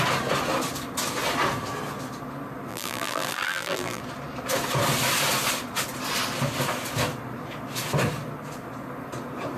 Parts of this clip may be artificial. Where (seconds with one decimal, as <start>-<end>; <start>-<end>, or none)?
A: 2.7-4.0